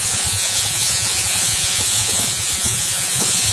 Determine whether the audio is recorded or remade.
remade